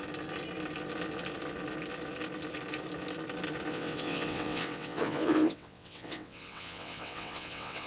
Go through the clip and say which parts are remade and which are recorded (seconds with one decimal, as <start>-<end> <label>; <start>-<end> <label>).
0.0-3.7 recorded; 3.7-7.9 remade